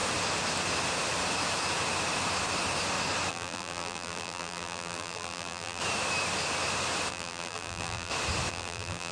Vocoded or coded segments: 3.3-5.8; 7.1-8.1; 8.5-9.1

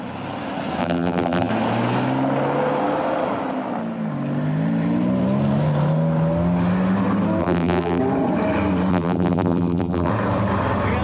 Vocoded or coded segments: 0.8-1.5; 7.4-8.0; 8.9-10.1

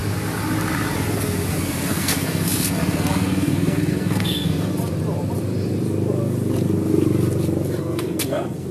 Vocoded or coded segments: 1.5-4.7; 7.8-8.7

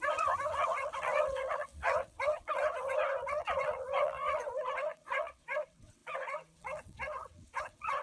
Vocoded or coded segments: 0.0-8.0

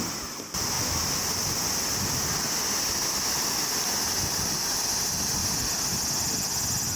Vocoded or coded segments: none